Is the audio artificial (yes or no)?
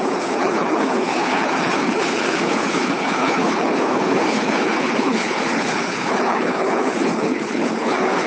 yes